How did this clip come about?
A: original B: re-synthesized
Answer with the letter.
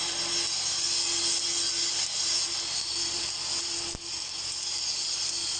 A